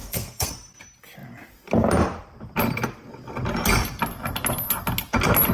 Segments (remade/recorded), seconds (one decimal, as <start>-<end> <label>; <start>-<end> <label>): 0.0-0.5 remade; 0.5-5.5 recorded